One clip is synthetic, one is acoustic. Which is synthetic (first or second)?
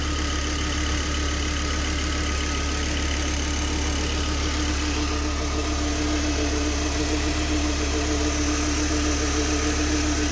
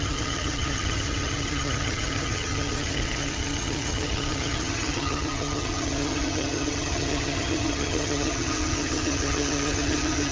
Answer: second